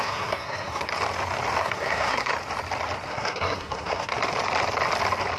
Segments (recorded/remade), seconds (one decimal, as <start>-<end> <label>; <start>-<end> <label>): 0.0-0.9 remade; 0.9-1.6 recorded; 1.6-2.3 remade; 2.3-3.1 recorded; 3.1-4.1 remade; 4.1-5.4 recorded